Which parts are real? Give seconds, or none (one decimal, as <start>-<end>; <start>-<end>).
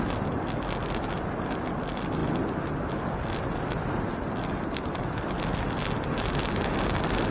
0.0-7.3